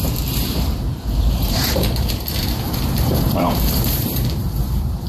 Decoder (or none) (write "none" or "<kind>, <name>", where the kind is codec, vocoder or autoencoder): vocoder, BigVGAN v2